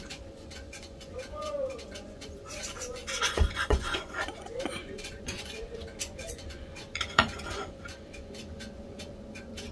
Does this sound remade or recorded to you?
remade